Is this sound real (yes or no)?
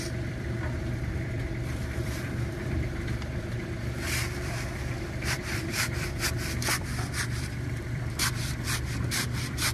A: no